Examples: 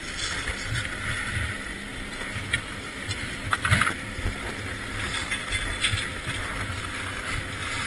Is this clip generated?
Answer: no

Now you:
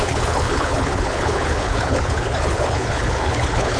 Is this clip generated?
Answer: yes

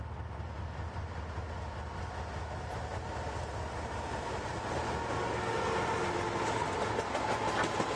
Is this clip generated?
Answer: no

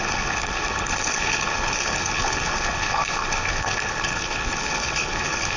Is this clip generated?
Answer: yes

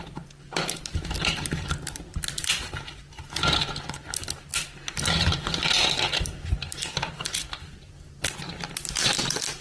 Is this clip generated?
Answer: no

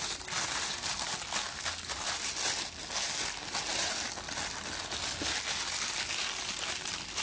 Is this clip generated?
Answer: no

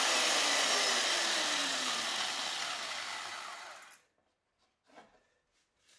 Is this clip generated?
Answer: no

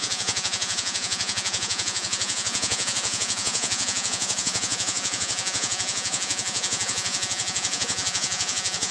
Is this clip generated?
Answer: yes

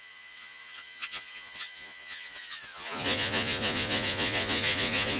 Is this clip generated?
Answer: yes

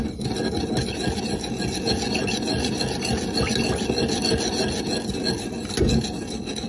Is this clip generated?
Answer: no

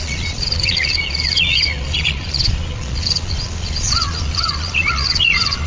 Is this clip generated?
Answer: yes